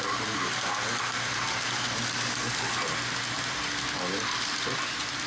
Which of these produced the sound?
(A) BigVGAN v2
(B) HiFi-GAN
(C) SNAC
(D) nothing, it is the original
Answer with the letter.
D